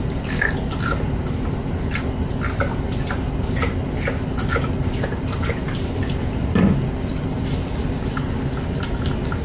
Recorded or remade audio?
recorded